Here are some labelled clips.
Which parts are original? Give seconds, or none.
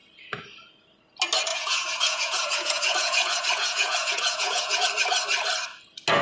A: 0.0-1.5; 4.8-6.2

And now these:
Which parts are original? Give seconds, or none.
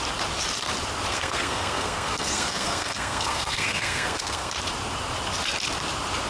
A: 0.0-1.1; 4.5-6.3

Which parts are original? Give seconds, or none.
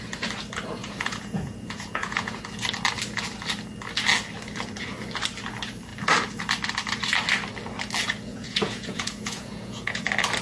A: 0.0-0.8; 2.4-8.3; 10.0-10.4